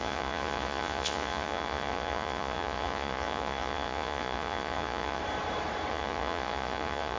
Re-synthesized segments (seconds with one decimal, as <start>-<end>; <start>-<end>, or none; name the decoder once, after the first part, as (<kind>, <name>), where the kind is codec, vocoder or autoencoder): 0.0-5.2 (vocoder, Vocos); 5.9-7.2